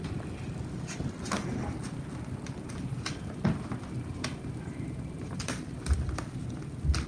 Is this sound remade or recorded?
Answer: recorded